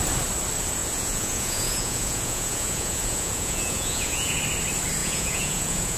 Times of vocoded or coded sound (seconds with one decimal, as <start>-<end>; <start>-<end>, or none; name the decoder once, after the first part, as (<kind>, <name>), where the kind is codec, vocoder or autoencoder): 0.8-4.4 (vocoder, Vocos); 5.0-6.0